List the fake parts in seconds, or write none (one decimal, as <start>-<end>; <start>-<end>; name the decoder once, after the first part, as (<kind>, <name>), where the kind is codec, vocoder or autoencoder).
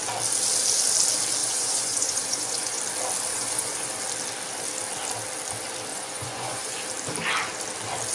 1.4-2.8 (vocoder, Vocos); 3.3-3.9; 5.9-6.8